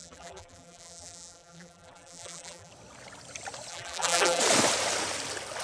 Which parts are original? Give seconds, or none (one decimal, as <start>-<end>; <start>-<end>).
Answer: 2.7-3.7; 4.4-5.6